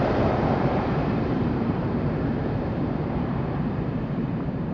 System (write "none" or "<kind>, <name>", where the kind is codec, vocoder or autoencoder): vocoder, BigVGAN v2